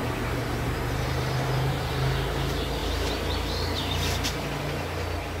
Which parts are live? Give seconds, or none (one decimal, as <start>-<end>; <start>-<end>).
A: 1.9-5.4